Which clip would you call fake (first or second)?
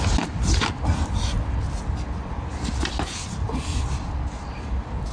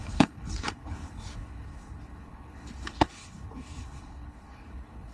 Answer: second